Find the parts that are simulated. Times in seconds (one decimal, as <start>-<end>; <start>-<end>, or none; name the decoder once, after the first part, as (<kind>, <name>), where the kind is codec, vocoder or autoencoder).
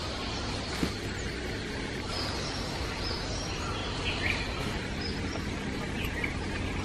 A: 0.0-3.1 (vocoder, BigVGAN v2); 3.8-5.8